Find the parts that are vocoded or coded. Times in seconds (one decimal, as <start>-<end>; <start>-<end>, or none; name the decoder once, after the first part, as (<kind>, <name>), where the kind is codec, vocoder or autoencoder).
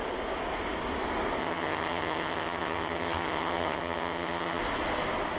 1.4-4.6 (vocoder, HiFi-GAN)